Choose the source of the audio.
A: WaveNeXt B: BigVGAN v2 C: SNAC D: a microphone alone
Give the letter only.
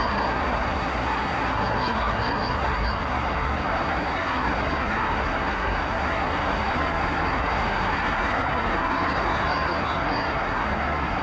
C